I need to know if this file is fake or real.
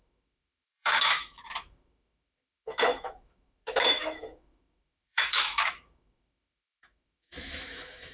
fake